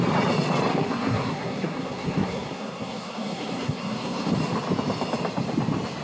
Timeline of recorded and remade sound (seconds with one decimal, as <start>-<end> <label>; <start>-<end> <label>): 0.0-0.7 recorded; 0.7-4.3 remade; 4.3-6.0 recorded

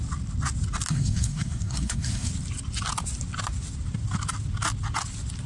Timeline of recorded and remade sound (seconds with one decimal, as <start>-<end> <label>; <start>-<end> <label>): 0.0-0.9 recorded; 0.9-2.3 remade; 2.3-5.5 recorded